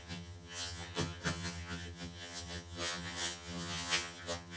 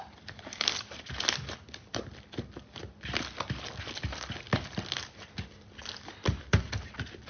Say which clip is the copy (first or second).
first